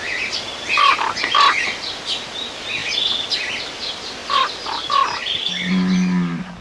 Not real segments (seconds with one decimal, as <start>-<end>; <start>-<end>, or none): none

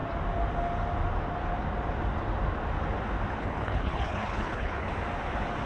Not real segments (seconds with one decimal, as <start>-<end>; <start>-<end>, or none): 3.4-4.9

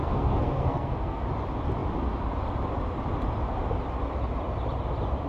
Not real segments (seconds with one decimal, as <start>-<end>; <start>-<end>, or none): 0.0-1.2

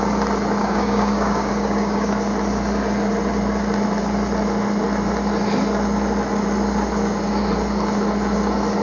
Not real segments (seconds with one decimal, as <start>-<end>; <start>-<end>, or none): 0.6-2.1

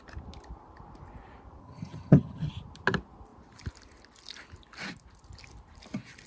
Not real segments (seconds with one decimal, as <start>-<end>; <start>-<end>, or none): 1.6-2.5

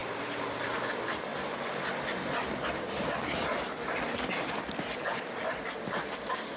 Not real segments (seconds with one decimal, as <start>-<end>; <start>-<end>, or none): none

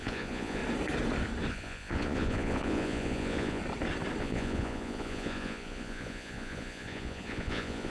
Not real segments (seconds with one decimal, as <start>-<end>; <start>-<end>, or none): 0.0-0.6; 1.5-3.6; 4.2-7.9